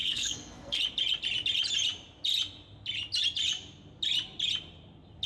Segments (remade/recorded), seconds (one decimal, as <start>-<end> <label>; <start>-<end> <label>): 0.0-0.8 remade; 0.8-5.3 recorded